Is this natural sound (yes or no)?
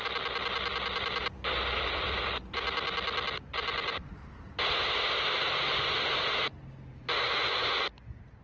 yes